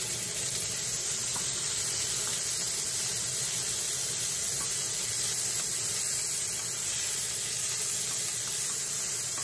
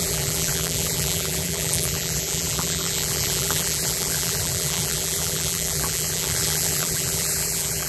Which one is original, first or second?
first